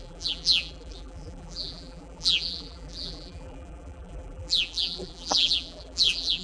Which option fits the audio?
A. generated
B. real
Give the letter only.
A